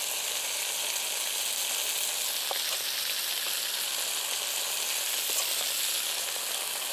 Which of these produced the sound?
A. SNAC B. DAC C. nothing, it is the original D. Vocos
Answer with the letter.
C